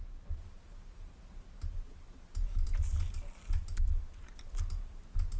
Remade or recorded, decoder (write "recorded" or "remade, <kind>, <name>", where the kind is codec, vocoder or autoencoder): recorded